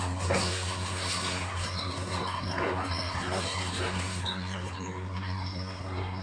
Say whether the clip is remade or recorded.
remade